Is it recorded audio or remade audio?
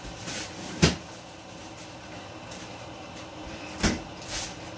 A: recorded